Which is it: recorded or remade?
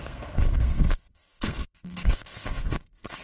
remade